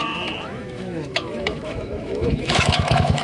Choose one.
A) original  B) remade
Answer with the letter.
B